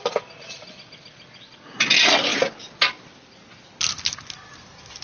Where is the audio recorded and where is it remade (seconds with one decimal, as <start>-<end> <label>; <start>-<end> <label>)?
0.0-5.0 recorded

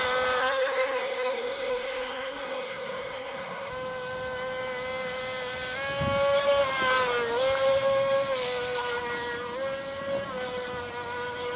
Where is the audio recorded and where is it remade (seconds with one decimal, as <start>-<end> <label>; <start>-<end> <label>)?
0.0-0.4 recorded; 0.4-3.7 remade; 3.7-11.6 recorded

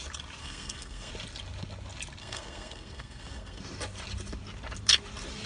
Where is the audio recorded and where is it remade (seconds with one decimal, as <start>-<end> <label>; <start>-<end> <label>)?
0.0-0.4 recorded; 0.4-1.1 remade; 1.1-2.2 recorded; 2.2-3.6 remade; 3.6-5.5 recorded

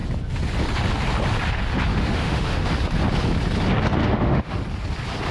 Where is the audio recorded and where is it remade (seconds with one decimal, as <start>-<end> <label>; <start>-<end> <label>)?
0.0-1.9 recorded; 1.9-2.7 remade; 2.7-4.0 recorded; 4.0-4.5 remade; 4.5-5.3 recorded

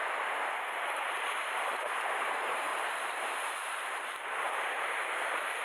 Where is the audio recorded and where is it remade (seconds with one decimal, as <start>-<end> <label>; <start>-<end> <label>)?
0.0-2.7 remade; 2.7-3.2 recorded; 3.2-5.6 remade

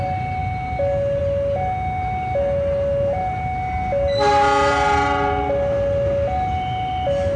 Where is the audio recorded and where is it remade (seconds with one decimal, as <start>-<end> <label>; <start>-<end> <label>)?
0.0-7.4 recorded

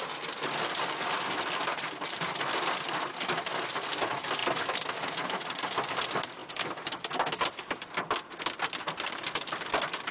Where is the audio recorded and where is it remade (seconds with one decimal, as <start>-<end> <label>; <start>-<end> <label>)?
0.0-10.1 recorded